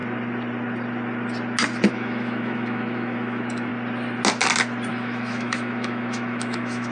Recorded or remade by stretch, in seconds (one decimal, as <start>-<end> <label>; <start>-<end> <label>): 0.0-1.9 recorded; 1.9-3.7 remade; 3.7-4.9 recorded; 4.9-6.9 remade